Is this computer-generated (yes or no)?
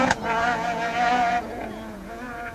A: yes